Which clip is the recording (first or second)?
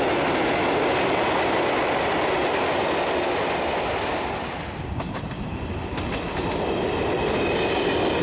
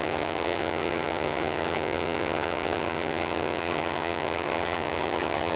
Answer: first